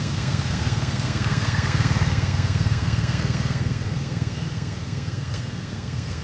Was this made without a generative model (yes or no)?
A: no